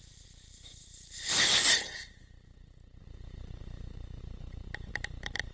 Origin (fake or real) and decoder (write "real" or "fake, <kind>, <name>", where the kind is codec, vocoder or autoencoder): fake, vocoder, BigVGAN v2